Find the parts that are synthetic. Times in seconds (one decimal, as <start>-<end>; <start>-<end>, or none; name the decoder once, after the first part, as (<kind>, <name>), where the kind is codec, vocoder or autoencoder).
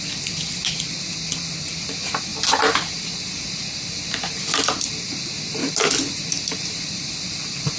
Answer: none